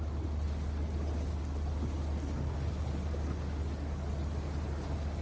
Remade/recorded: recorded